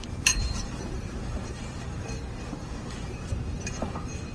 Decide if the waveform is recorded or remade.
remade